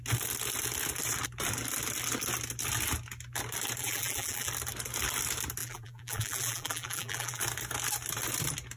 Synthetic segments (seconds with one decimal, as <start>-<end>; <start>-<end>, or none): 3.8-4.5; 5.6-7.4